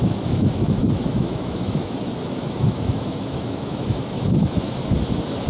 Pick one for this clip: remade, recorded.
remade